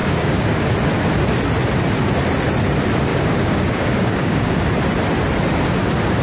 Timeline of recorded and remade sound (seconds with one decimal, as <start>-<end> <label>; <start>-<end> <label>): 0.0-0.6 remade; 0.6-3.1 recorded; 3.1-4.7 remade; 4.7-6.2 recorded